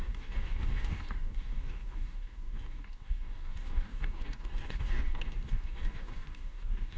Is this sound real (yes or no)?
no